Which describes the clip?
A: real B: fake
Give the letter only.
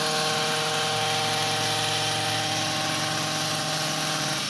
A